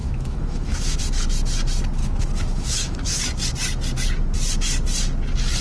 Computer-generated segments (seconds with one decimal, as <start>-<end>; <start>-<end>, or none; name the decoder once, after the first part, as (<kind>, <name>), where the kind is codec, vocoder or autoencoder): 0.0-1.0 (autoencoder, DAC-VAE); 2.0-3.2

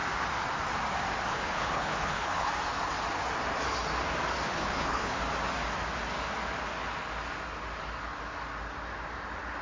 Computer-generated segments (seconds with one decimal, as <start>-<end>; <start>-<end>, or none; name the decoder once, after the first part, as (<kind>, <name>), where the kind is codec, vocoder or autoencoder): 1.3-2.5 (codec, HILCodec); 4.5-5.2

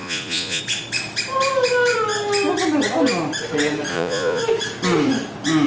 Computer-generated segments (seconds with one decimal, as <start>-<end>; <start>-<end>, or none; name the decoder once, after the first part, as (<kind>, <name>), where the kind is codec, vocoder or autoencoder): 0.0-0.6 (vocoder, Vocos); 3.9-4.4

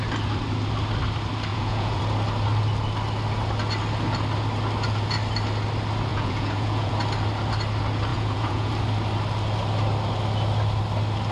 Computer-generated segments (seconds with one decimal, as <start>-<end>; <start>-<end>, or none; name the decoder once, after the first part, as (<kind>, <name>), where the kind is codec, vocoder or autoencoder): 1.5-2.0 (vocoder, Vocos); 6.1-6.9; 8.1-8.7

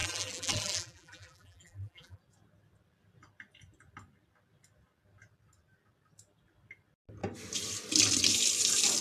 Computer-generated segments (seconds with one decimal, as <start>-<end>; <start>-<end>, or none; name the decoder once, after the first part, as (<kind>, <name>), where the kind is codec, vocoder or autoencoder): 0.0-2.2 (vocoder, BigVGAN v2)

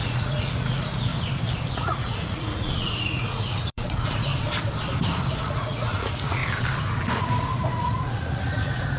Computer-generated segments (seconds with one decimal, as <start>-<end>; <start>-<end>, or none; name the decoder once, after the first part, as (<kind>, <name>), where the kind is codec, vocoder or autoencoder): 0.0-1.1 (vocoder, Vocos); 1.7-4.3; 5.4-6.4; 7.1-9.0